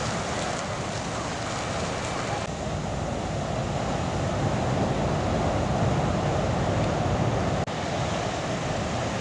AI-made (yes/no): no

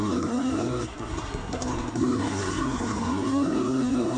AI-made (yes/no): yes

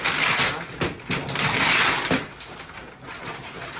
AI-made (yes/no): no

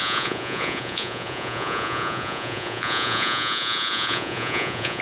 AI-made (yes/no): yes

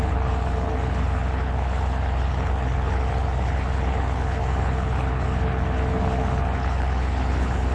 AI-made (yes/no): yes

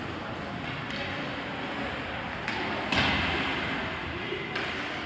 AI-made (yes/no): no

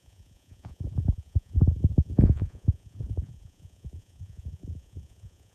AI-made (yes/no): yes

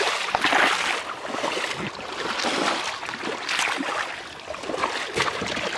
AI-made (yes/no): no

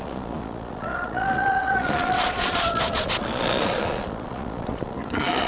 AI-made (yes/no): yes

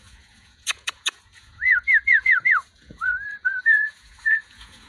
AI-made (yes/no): yes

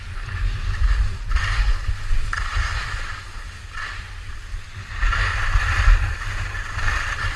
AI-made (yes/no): no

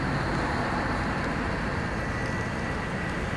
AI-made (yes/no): no